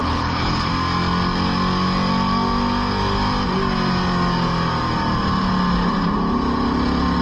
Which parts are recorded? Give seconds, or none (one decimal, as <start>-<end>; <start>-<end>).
0.7-7.2